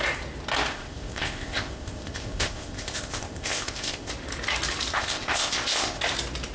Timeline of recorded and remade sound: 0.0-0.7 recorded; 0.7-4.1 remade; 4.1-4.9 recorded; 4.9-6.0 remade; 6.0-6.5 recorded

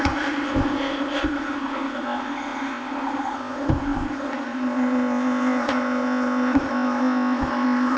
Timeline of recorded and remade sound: 0.0-8.0 remade

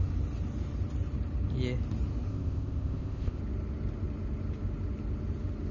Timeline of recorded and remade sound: 0.0-2.3 recorded; 2.3-3.4 remade; 3.4-5.7 recorded

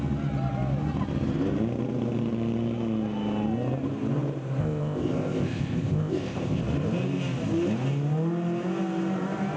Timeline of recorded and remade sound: 0.0-4.6 recorded; 4.6-6.6 remade; 6.6-9.6 recorded